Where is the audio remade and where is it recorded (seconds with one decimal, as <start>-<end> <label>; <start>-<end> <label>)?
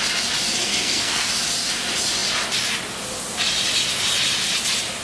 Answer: 0.0-0.6 recorded; 0.6-1.3 remade; 1.3-5.0 recorded